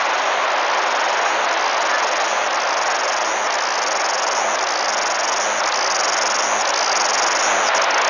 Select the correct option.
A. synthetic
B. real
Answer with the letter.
B